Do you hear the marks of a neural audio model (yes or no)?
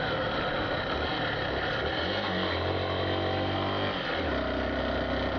no